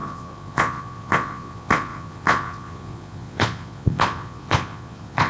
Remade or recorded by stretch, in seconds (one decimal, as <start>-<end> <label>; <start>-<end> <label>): 0.0-5.3 remade